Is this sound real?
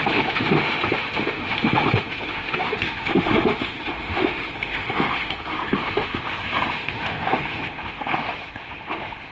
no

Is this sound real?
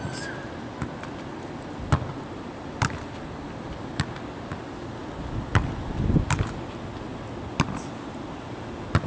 yes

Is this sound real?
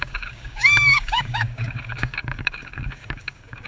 no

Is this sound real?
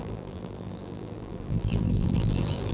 no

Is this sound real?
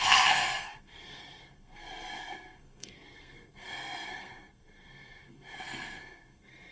no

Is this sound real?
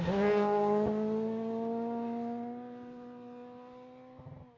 yes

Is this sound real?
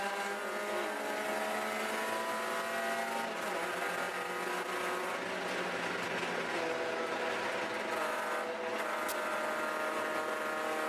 yes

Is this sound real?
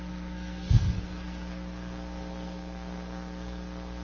no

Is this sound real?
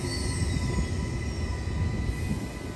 yes